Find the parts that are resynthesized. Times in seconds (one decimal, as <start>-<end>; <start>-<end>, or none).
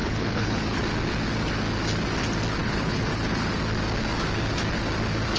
0.0-0.8; 2.6-3.5